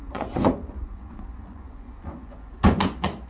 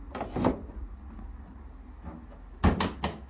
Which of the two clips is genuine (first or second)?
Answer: second